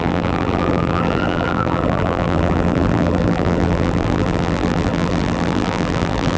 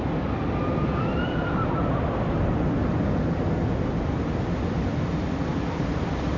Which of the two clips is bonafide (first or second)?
second